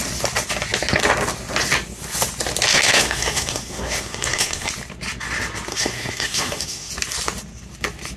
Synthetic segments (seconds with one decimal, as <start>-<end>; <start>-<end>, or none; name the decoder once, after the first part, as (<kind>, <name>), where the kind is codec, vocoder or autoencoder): 2.7-4.7 (codec, SNAC); 5.7-6.9